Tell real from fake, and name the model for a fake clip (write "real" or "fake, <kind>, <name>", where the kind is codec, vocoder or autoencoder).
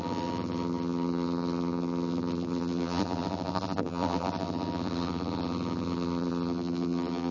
fake, vocoder, BigVGAN v2